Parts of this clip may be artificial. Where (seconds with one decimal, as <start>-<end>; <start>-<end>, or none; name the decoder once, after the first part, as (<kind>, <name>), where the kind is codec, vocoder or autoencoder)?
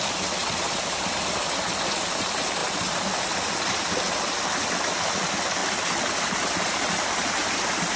0.4-2.2 (vocoder, BigVGAN v2); 2.6-5.0; 5.6-7.3